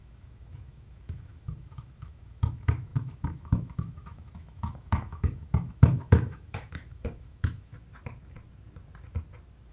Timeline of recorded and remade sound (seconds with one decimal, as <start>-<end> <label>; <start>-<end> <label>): 0.0-7.7 remade; 7.7-9.7 recorded